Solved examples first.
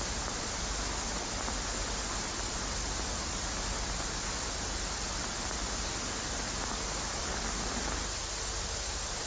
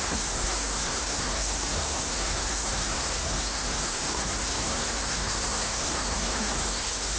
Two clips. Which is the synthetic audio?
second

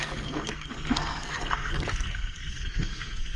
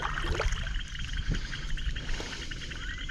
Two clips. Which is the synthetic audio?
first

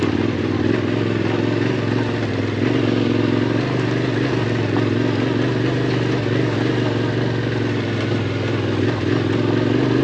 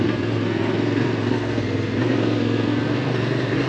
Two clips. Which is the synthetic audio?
second